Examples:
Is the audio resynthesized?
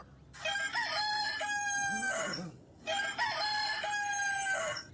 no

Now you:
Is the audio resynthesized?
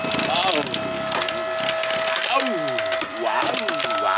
no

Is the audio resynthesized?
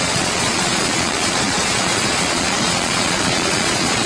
yes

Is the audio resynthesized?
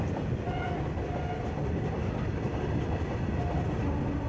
no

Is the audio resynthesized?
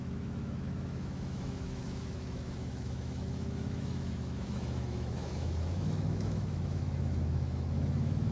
yes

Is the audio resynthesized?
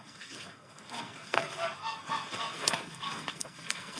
yes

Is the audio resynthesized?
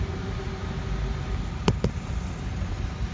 no